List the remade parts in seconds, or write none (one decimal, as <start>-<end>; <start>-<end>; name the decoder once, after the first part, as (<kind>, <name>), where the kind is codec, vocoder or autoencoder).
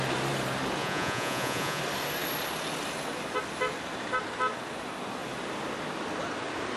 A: 0.8-1.8 (vocoder, Vocos)